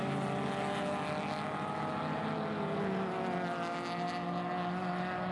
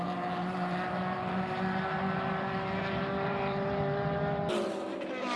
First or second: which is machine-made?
second